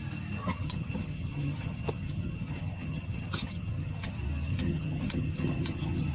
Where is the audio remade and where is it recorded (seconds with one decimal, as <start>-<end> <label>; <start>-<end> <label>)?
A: 0.0-0.4 recorded; 0.4-4.1 remade; 4.1-4.5 recorded; 4.5-6.1 remade

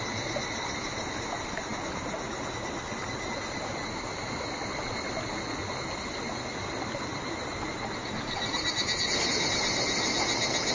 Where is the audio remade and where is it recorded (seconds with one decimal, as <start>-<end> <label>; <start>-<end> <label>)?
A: 0.0-10.7 recorded